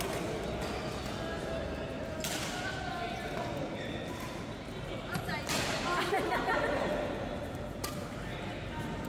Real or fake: real